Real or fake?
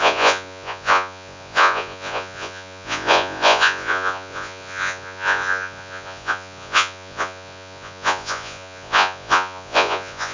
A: fake